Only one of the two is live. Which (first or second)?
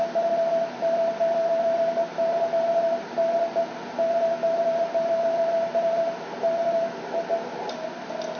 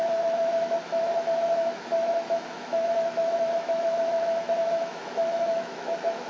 first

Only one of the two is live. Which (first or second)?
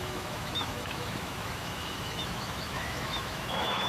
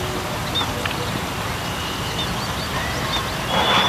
second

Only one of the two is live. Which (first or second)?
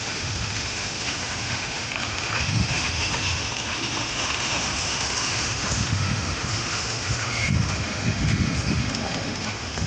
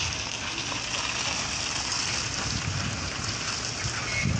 second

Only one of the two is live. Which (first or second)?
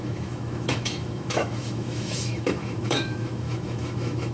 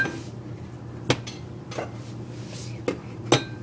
second